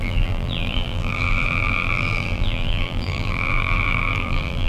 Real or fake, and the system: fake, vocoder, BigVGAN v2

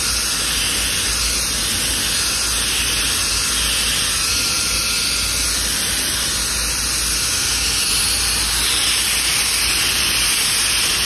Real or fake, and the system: real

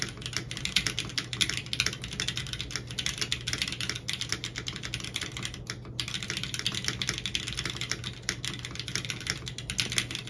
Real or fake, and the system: real